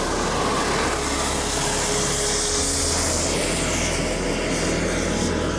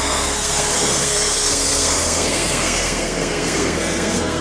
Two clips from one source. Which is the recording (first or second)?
first